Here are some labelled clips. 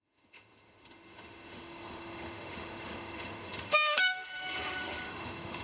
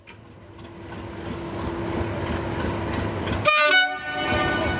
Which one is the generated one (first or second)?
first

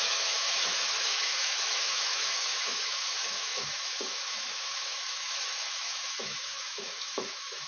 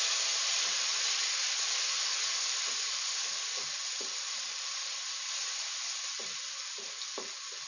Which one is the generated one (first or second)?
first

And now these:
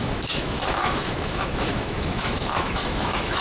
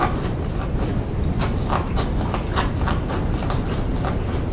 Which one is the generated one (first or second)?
first